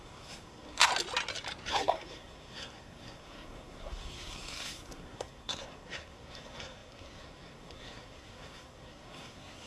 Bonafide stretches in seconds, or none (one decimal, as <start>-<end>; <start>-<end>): 0.9-1.7